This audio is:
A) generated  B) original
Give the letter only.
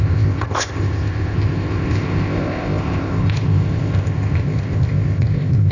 A